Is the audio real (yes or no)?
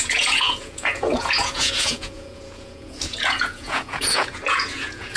no